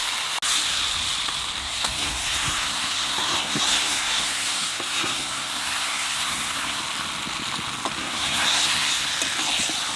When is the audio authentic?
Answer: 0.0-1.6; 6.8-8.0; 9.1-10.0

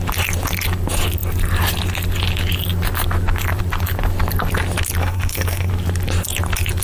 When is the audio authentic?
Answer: 0.0-5.0; 5.7-6.8

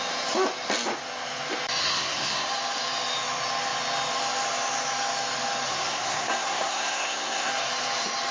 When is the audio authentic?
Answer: 0.0-1.8; 2.5-5.7; 7.5-8.3

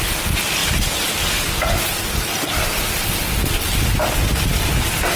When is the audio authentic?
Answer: 0.0-5.2